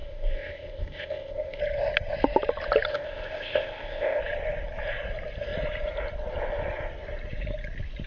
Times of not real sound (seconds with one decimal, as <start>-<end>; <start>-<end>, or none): 0.0-1.6; 2.9-4.2